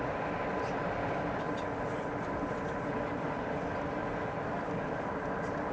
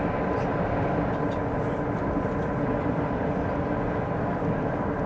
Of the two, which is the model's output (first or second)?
first